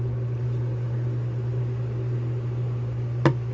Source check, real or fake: real